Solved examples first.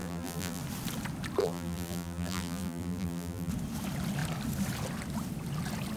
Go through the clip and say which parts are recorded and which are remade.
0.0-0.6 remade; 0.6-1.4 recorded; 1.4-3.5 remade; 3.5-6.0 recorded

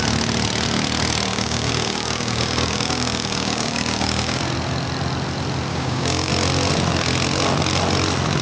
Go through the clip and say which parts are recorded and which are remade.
0.0-1.3 recorded; 1.3-4.4 remade; 4.4-5.7 recorded; 5.7-6.3 remade; 6.3-8.4 recorded